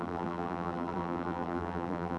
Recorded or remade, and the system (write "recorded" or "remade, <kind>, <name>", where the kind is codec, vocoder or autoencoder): remade, vocoder, BigVGAN v2